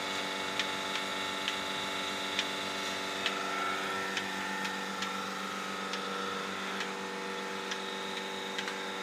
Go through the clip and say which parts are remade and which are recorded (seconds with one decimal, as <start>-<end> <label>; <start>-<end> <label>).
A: 0.0-9.0 recorded